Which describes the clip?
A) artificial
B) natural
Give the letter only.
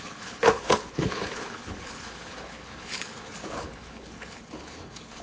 A